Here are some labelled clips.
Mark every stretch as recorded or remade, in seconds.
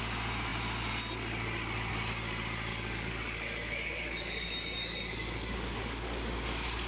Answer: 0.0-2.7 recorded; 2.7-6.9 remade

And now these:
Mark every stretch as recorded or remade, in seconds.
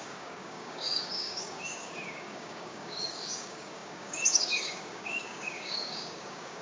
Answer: 0.0-6.6 remade